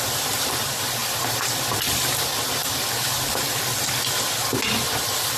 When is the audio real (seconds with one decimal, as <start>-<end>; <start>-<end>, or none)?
0.0-1.0; 2.1-2.6; 3.6-5.4